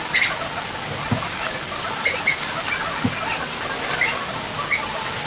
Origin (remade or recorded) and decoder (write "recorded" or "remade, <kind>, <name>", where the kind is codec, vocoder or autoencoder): recorded